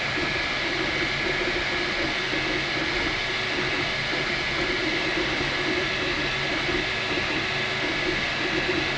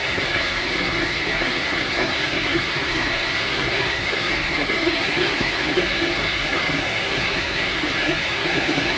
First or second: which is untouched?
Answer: first